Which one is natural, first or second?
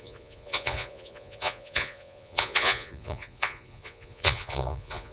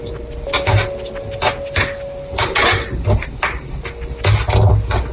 second